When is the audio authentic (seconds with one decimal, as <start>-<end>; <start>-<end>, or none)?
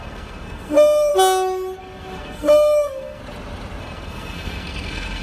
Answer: 1.1-1.8; 3.2-3.8